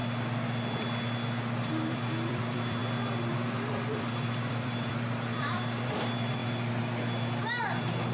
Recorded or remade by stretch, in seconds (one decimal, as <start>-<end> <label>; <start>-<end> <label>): 0.0-1.7 recorded; 1.7-2.8 remade; 2.8-3.3 recorded; 3.3-6.4 remade; 6.4-8.1 recorded

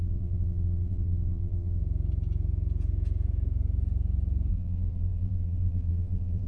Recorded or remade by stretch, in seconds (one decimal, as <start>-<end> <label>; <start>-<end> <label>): 0.0-1.8 remade; 1.8-4.5 recorded; 4.5-6.5 remade

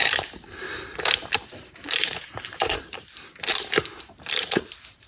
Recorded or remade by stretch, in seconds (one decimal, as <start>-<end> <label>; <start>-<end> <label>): 0.0-3.1 remade; 3.1-3.5 recorded; 3.5-5.1 remade

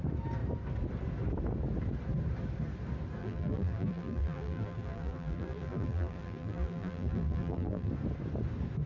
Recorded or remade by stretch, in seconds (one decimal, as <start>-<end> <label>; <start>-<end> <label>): 0.0-3.2 recorded; 3.2-7.9 remade; 7.9-8.9 recorded

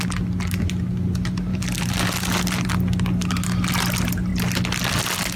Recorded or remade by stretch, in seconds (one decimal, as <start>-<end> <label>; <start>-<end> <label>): 0.0-1.5 recorded; 1.5-2.7 remade; 2.7-5.4 recorded

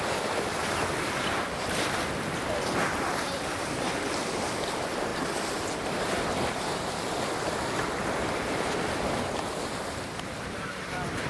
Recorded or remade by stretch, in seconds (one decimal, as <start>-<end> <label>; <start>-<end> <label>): 0.0-5.1 remade; 5.1-7.7 recorded; 7.7-11.3 remade